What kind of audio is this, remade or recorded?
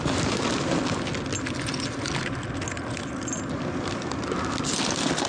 recorded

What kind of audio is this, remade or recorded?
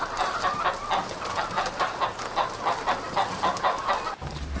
recorded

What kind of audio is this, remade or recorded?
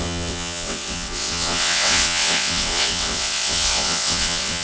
remade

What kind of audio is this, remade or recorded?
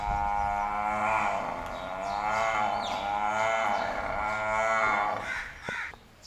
recorded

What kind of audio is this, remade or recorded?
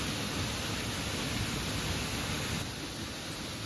recorded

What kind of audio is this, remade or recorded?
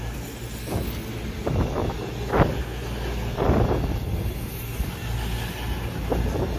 recorded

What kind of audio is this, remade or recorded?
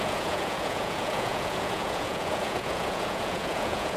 remade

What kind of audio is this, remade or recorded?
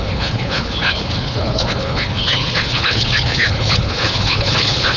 remade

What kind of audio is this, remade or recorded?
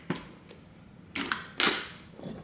recorded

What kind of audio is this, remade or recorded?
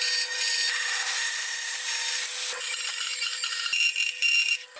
recorded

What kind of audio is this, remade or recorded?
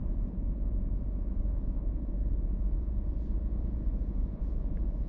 remade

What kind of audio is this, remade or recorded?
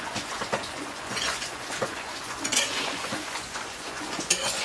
remade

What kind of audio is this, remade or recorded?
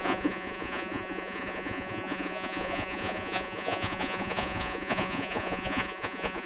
remade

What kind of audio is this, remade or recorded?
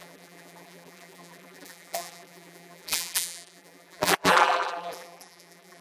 remade